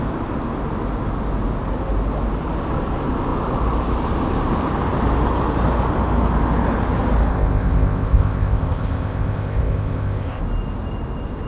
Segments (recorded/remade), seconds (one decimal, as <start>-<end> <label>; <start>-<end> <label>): 0.0-7.3 recorded; 7.3-10.4 remade; 10.4-11.5 recorded